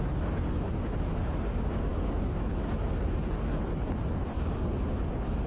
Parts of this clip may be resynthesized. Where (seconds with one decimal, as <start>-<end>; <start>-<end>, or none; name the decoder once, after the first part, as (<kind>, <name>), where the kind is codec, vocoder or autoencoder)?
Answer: none